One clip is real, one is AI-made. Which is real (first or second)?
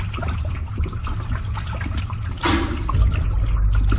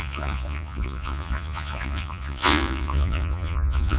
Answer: first